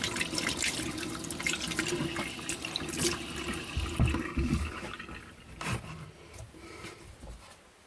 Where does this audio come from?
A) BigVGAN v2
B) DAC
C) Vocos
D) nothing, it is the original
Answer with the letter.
D